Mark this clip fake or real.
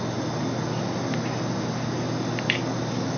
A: real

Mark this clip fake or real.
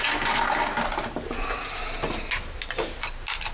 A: real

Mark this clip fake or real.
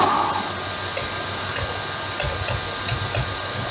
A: real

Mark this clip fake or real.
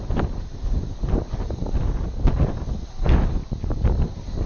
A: real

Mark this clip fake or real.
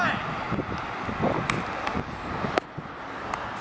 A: real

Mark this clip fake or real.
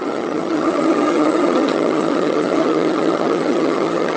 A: fake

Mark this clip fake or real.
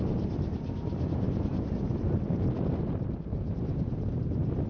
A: real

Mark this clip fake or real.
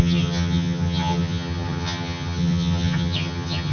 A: fake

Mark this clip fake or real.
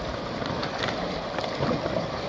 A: real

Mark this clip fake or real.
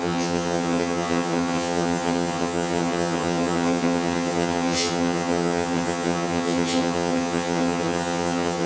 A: fake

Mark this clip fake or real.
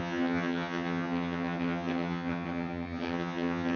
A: fake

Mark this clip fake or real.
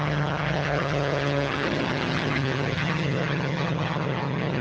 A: fake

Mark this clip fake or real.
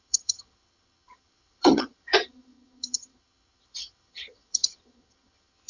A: fake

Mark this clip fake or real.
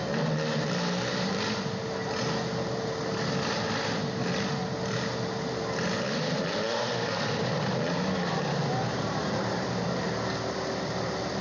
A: real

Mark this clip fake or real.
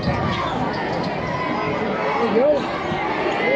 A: real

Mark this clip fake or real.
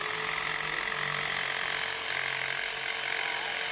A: real